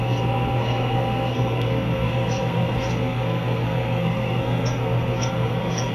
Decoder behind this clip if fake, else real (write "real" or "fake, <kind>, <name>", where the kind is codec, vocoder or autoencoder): fake, codec, SNAC